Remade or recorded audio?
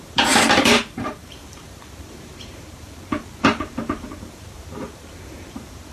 remade